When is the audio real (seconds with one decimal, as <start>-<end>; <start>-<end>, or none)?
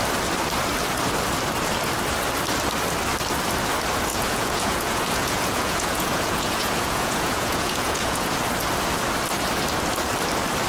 0.0-4.1; 8.3-10.7